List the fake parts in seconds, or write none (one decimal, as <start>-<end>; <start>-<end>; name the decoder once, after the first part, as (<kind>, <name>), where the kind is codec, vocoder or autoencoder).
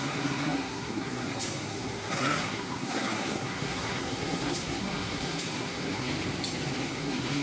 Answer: 0.0-6.1 (codec, SNAC); 6.8-7.4